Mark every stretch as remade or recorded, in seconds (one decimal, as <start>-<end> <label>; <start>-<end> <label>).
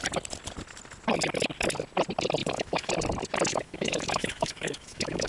0.0-2.4 recorded; 2.4-2.9 remade; 2.9-3.5 recorded; 3.5-5.3 remade